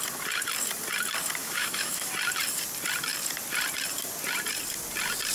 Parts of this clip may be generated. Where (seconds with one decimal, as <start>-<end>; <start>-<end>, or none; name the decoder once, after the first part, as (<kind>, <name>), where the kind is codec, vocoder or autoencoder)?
1.4-2.1 (autoencoder, DAC-VAE)